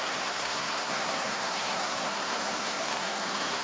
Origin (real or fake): fake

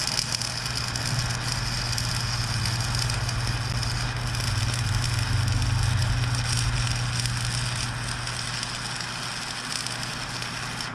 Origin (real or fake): real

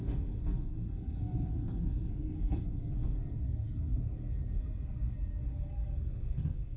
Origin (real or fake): fake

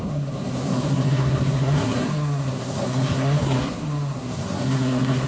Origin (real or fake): fake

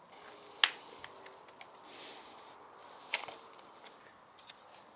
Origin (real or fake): real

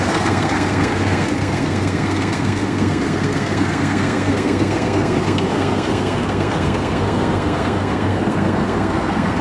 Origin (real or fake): fake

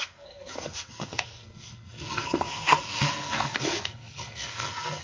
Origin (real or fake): fake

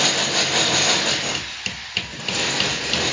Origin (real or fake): real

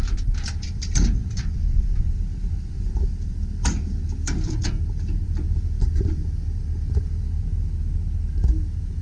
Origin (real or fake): real